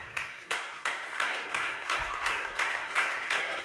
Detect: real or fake fake